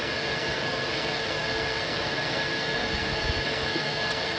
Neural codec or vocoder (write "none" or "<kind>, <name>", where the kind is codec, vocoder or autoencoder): codec, SNAC